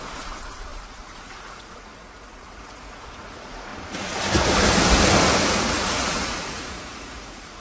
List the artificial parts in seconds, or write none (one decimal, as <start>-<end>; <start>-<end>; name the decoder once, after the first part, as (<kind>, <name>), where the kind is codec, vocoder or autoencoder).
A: 0.0-3.7 (vocoder, Vocos); 5.5-7.6